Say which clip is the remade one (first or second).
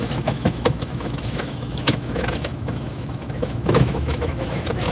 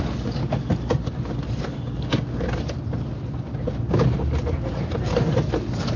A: first